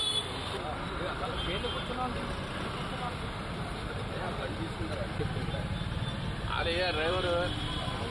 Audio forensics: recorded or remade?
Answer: recorded